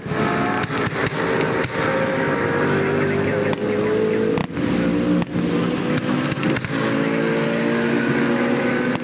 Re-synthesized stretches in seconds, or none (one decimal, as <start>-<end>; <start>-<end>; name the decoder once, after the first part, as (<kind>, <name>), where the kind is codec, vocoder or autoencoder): none